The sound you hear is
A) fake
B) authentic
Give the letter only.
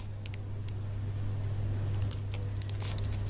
B